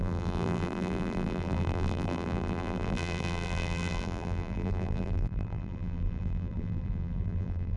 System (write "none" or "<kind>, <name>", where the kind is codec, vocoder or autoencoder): vocoder, BigVGAN v2